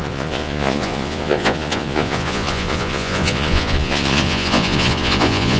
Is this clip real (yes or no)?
no